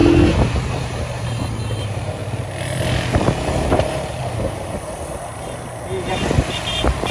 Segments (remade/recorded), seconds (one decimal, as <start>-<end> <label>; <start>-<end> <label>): 0.0-0.7 recorded; 0.7-2.2 remade; 2.2-3.5 recorded; 3.5-4.2 remade; 4.2-6.5 recorded; 6.5-7.1 remade